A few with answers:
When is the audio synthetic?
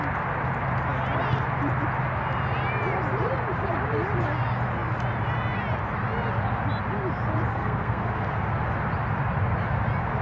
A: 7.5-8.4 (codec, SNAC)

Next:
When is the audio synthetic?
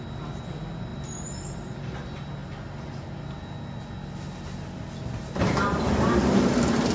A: 0.9-1.8 (vocoder, BigVGAN v2)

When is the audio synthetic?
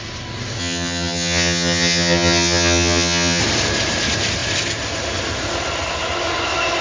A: 0.6-3.4 (vocoder, HiFi-GAN)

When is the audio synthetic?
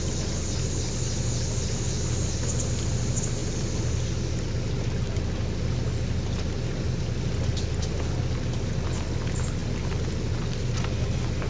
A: none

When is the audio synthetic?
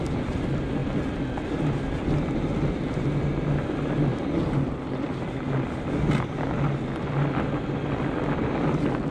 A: none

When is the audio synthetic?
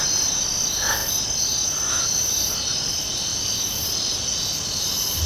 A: none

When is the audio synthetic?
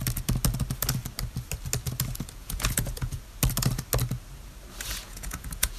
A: 2.4-3.2 (vocoder, Vocos); 4.9-5.8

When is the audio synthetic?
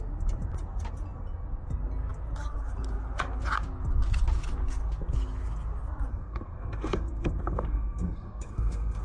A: 6.1-9.0 (codec, SNAC)